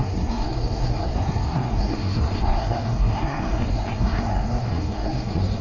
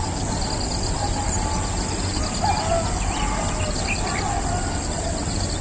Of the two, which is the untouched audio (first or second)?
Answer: second